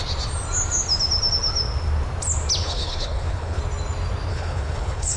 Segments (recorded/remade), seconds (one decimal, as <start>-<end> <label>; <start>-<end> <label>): 0.0-2.6 recorded; 2.6-3.6 remade; 3.6-4.3 recorded; 4.3-5.2 remade